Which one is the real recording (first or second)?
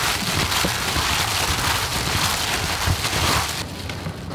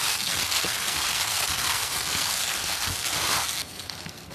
first